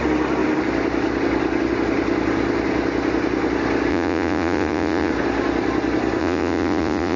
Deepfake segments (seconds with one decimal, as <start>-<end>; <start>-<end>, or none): 3.9-5.1; 6.2-7.2